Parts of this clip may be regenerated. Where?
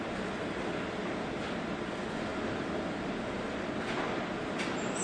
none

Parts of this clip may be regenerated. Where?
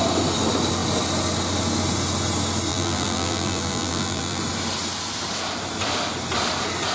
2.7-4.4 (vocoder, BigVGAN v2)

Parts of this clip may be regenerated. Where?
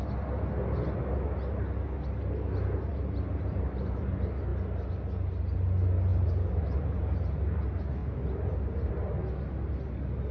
2.9-4.0 (vocoder, BigVGAN v2); 6.1-7.6